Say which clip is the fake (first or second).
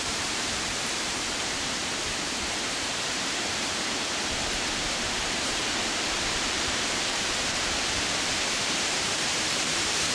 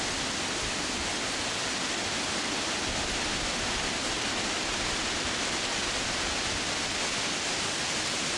first